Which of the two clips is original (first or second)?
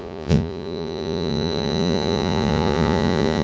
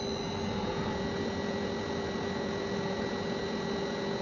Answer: second